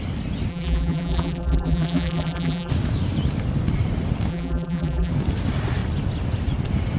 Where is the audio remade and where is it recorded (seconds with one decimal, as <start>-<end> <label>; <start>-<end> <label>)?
0.0-0.5 recorded; 0.5-2.7 remade; 2.7-4.3 recorded; 4.3-5.1 remade; 5.1-7.0 recorded